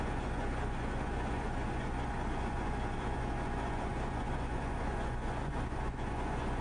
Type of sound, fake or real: fake